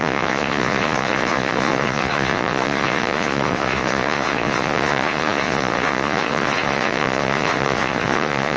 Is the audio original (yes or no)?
no